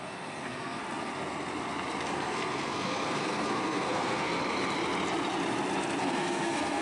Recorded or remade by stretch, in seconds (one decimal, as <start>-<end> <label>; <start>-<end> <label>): 0.0-0.8 remade; 0.8-2.1 recorded; 2.1-4.4 remade; 4.4-6.0 recorded; 6.0-6.8 remade